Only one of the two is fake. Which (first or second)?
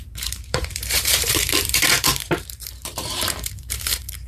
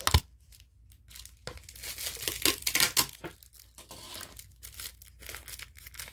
first